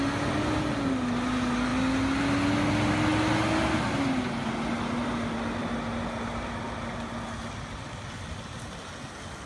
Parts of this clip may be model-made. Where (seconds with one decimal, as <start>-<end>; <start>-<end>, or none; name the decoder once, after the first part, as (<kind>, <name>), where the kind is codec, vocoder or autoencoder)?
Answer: none